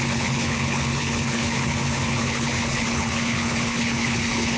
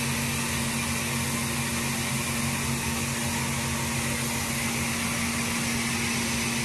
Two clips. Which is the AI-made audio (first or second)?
first